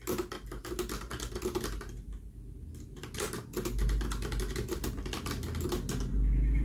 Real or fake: real